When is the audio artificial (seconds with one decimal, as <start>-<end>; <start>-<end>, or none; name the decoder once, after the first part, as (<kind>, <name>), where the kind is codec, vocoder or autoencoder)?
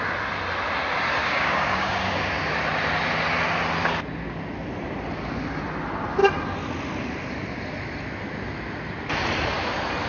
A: 1.2-2.2 (codec, DAC)